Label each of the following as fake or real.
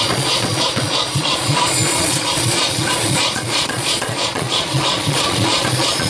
fake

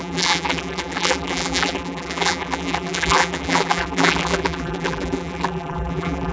fake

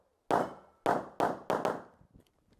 real